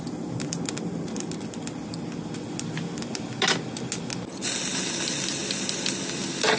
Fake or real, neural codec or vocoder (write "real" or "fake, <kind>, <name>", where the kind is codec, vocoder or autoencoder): real